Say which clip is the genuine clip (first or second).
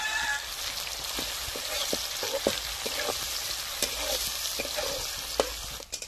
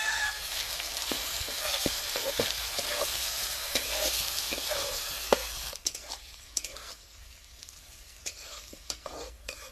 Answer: first